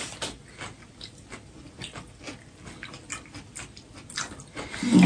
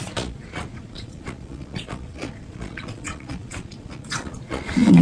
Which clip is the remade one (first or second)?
second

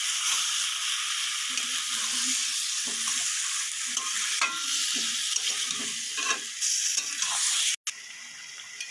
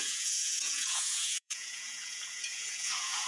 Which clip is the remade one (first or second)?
second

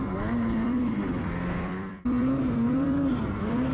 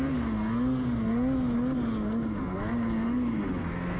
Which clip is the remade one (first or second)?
first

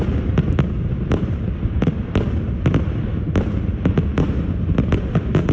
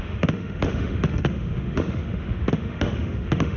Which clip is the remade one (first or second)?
second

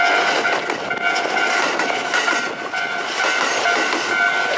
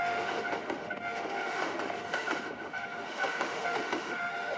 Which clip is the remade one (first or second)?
second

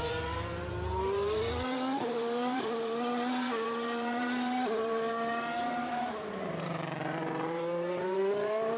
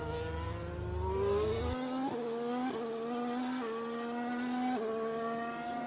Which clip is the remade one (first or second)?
first